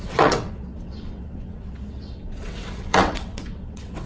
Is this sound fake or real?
fake